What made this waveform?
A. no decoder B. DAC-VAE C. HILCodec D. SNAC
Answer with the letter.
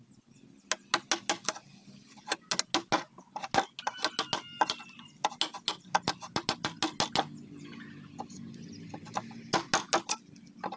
A